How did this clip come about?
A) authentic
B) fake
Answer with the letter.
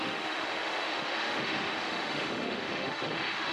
B